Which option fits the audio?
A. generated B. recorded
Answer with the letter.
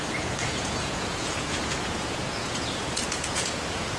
A